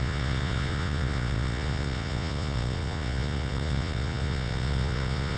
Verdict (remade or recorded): remade